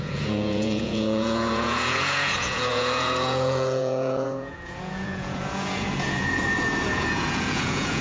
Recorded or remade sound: remade